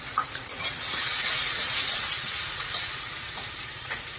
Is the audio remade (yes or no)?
yes